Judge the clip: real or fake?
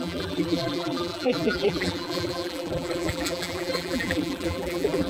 fake